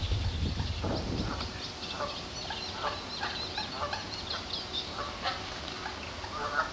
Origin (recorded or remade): recorded